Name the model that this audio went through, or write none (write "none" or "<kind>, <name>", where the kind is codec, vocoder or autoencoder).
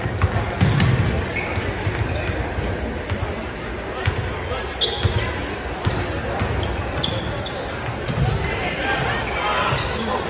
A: none